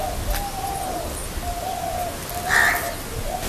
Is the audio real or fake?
real